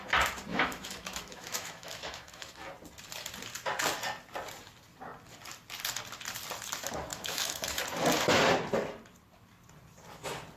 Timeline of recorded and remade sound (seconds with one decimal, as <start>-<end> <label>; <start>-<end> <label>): 0.0-0.5 recorded; 0.5-2.7 remade; 2.7-7.1 recorded; 7.1-7.8 remade; 7.8-10.6 recorded